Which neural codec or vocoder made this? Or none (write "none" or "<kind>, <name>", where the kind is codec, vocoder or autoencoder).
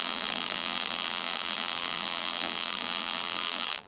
vocoder, BigVGAN v2